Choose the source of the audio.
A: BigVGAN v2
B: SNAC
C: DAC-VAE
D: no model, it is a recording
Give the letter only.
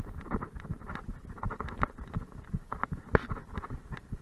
D